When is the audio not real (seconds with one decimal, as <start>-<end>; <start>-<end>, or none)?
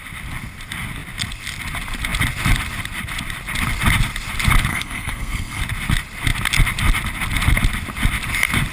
4.7-5.6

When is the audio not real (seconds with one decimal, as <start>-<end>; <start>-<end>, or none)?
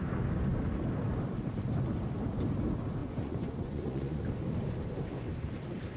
3.0-4.2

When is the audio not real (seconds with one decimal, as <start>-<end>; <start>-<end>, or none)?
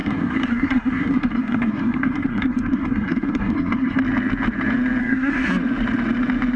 0.0-4.0; 5.0-5.5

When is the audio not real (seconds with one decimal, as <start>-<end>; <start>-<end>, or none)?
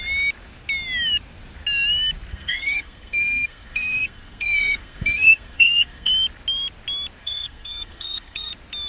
2.3-6.1; 7.2-8.5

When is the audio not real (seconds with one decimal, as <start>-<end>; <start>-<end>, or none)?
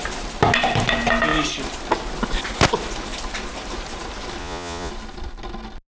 4.4-4.9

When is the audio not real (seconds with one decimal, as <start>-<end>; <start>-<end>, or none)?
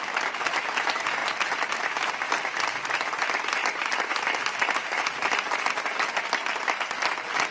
none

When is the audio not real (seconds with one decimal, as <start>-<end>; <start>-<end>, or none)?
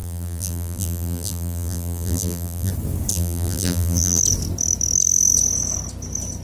0.0-2.7; 3.1-4.2